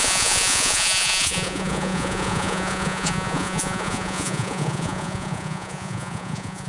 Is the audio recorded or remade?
remade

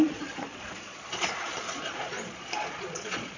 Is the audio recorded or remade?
remade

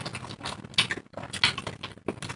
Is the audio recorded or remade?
recorded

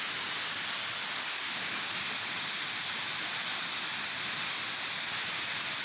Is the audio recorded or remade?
recorded